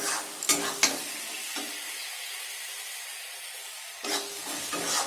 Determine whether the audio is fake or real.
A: real